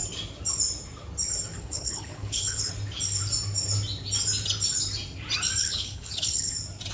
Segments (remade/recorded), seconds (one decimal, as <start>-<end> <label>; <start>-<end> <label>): 0.0-1.5 recorded; 1.5-2.7 remade; 2.7-5.6 recorded; 5.6-6.5 remade; 6.5-6.9 recorded